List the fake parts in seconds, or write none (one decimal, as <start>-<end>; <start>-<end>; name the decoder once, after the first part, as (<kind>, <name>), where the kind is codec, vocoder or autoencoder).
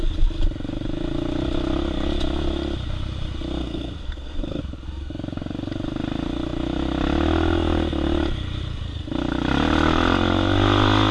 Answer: 3.6-4.6 (codec, SNAC)